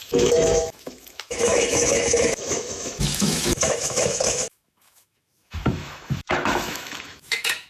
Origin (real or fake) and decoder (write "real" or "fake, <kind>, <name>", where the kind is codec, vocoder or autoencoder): fake, autoencoder, DAC-VAE